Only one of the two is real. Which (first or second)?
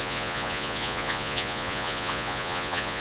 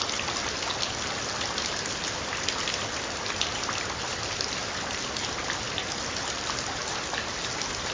second